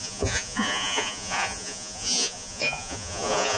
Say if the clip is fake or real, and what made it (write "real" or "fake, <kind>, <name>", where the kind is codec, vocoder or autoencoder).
fake, vocoder, Vocos